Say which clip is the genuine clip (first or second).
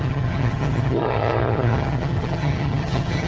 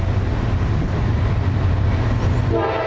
second